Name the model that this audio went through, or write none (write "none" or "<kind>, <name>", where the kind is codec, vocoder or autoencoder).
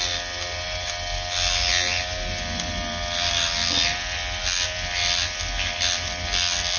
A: none